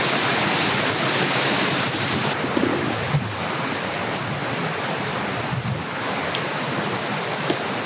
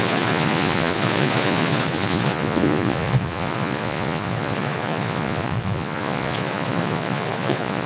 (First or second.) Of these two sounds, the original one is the first